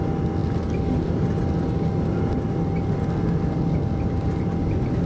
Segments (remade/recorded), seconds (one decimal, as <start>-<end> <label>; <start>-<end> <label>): 0.0-5.1 recorded

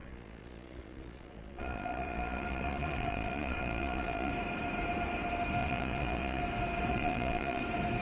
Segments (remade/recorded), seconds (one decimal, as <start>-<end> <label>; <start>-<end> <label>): 0.0-4.3 remade; 4.3-5.6 recorded; 5.6-6.4 remade; 6.4-6.9 recorded; 6.9-7.6 remade; 7.6-8.0 recorded